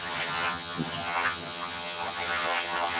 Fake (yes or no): yes